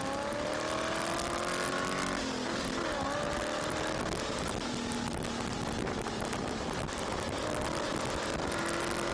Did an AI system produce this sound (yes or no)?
no